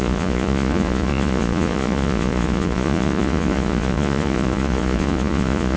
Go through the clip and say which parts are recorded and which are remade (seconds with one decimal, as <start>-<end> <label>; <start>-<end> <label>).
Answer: 0.0-5.8 remade